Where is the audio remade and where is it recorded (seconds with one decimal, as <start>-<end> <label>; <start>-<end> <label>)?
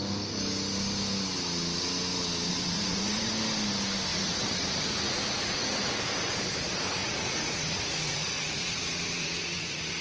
0.0-2.5 recorded; 2.5-3.3 remade; 3.3-4.1 recorded; 4.1-6.0 remade; 6.0-7.0 recorded; 7.0-10.0 remade